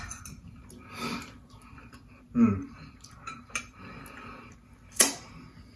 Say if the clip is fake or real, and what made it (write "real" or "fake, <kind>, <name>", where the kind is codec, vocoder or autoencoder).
real